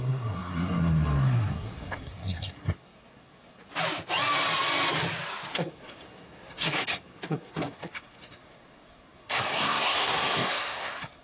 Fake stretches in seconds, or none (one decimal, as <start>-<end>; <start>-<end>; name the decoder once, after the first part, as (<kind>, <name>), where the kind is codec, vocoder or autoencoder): 0.0-3.6 (codec, SNAC); 5.5-11.2